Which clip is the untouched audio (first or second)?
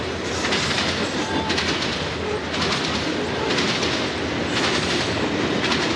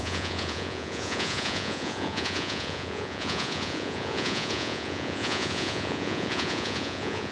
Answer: first